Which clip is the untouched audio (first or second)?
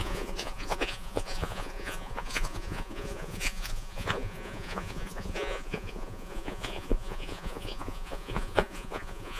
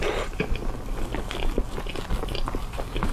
second